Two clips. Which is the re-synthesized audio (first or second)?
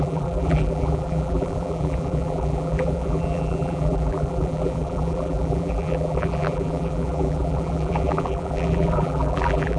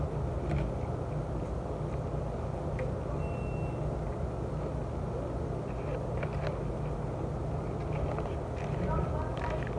first